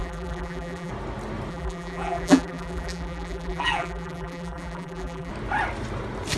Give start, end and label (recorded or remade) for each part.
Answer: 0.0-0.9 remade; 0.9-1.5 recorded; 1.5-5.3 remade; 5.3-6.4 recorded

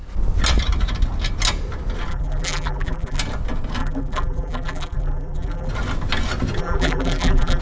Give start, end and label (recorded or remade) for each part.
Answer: 0.0-2.1 recorded; 2.1-3.2 remade; 3.2-3.8 recorded; 3.8-5.7 remade; 5.7-6.6 recorded; 6.6-7.6 remade